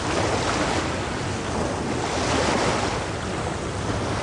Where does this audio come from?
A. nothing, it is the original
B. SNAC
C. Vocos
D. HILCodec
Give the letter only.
A